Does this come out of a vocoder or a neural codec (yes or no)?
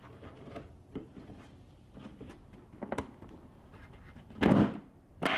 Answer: no